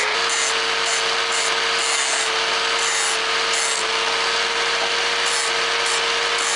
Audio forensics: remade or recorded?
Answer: recorded